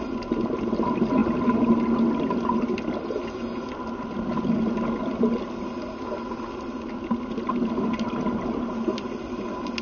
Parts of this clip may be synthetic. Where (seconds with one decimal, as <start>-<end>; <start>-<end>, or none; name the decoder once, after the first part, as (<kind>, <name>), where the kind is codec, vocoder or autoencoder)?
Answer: none